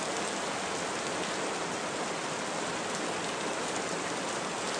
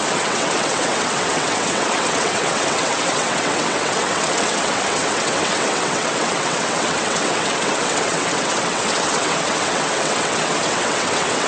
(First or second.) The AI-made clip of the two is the second